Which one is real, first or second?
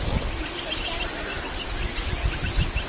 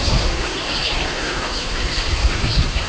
first